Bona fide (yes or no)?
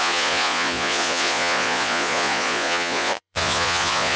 no